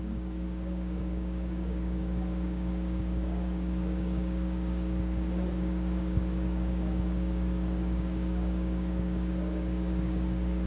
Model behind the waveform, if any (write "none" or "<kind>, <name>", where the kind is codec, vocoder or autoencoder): codec, DAC